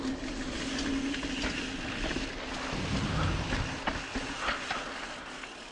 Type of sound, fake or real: real